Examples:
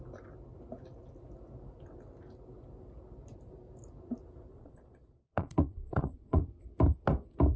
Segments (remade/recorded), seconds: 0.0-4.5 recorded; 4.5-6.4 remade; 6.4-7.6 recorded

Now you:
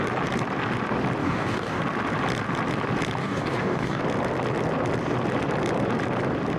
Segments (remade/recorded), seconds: 0.0-1.2 recorded; 1.2-1.8 remade; 1.8-3.2 recorded; 3.2-4.0 remade; 4.0-6.6 recorded